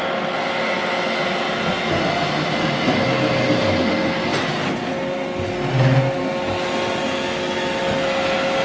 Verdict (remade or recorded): recorded